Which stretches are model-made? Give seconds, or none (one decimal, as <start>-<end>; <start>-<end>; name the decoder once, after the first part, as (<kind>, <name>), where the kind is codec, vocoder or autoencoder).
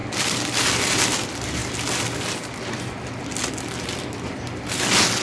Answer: 0.0-0.7 (vocoder, BigVGAN v2)